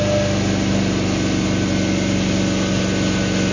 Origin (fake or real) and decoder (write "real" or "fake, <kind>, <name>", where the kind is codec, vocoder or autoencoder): real